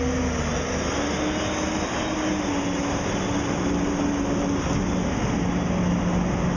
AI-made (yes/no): no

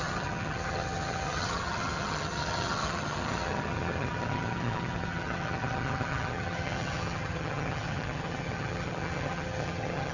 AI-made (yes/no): yes